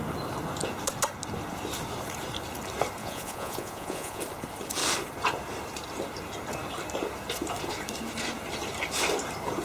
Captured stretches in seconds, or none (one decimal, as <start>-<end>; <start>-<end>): 0.0-3.0; 4.2-9.6